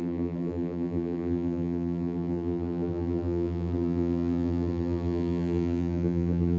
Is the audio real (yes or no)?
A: no